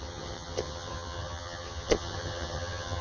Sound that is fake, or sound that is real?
fake